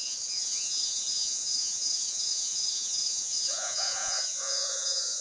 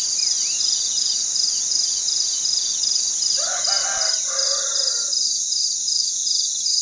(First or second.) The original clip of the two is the second